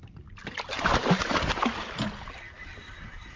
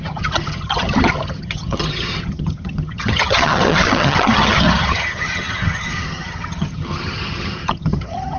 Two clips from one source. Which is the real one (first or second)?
first